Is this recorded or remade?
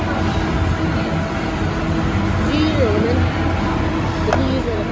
recorded